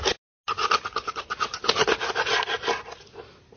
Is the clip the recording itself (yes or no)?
yes